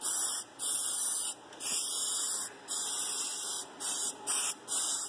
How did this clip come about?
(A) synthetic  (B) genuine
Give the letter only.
B